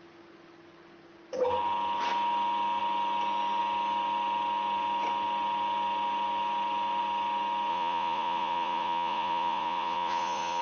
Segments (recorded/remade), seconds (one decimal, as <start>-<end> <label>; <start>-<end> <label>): 0.0-7.7 recorded; 7.7-10.6 remade